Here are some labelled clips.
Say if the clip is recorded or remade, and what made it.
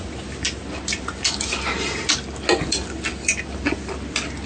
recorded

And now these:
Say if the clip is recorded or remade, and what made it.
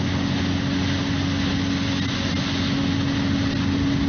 recorded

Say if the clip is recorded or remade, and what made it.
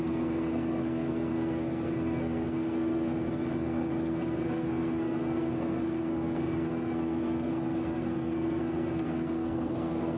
remade, codec, SNAC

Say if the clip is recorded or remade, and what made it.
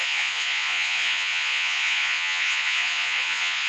remade, vocoder, Vocos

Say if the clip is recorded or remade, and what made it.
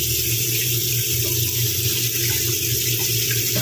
recorded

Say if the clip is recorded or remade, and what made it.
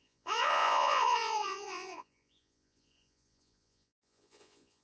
remade, vocoder, Vocos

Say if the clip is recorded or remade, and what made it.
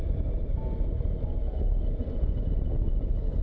recorded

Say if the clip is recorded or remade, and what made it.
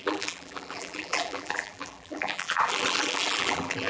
remade, vocoder, BigVGAN v2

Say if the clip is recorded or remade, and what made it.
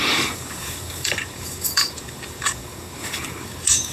remade, codec, DAC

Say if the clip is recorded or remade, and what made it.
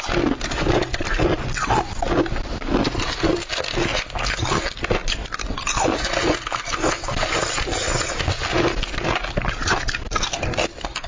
recorded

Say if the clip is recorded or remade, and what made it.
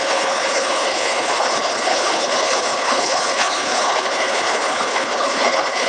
remade, codec, HILCodec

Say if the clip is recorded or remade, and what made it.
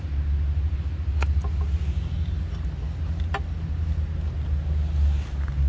recorded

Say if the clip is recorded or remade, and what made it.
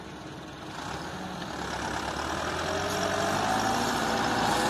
recorded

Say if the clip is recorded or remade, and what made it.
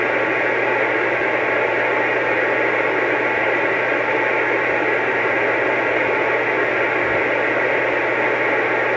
recorded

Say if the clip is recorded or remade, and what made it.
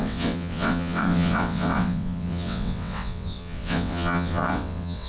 remade, vocoder, WaveNeXt